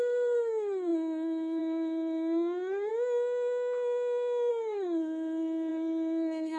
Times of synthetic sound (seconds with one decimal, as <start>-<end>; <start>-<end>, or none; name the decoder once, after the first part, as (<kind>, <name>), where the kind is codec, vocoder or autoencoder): 0.0-2.9 (codec, SNAC); 4.5-6.6